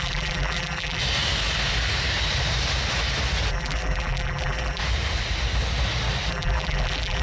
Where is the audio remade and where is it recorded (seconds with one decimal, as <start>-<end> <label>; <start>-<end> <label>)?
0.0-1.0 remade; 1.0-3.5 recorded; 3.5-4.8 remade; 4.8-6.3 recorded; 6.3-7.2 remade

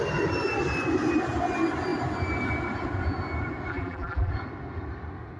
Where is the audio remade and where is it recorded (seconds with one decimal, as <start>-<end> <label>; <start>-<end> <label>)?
0.0-3.7 recorded; 3.7-4.3 remade; 4.3-5.4 recorded

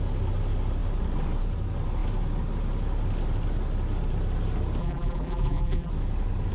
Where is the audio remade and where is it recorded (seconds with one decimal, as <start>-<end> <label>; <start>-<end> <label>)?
0.0-4.8 recorded; 4.8-5.9 remade; 5.9-6.5 recorded

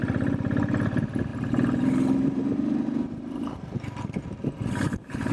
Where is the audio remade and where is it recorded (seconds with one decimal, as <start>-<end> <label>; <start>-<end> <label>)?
0.0-1.3 recorded; 1.3-4.5 remade; 4.5-5.3 recorded

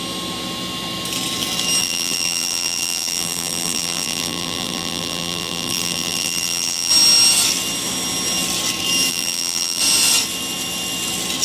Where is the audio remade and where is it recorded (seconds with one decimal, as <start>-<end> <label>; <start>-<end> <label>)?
0.0-1.8 recorded; 1.8-6.9 remade; 6.9-9.1 recorded; 9.1-9.8 remade; 9.8-11.4 recorded

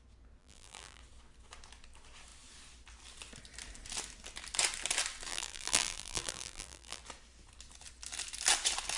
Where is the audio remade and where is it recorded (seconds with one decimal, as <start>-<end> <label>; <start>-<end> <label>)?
0.0-0.4 recorded; 0.4-1.0 remade; 1.0-5.3 recorded; 5.3-7.0 remade; 7.0-9.0 recorded

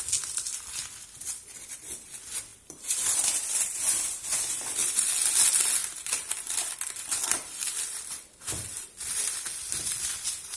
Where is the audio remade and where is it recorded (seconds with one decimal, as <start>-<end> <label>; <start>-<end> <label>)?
0.0-2.5 recorded; 2.5-5.1 remade; 5.1-5.8 recorded; 5.8-9.2 remade; 9.2-10.6 recorded